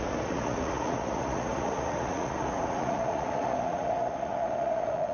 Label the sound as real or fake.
fake